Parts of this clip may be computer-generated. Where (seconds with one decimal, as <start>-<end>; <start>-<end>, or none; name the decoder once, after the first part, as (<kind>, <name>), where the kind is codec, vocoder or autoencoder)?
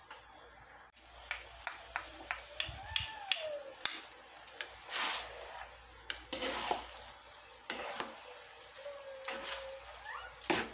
none